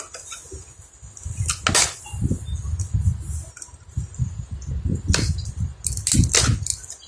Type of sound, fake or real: real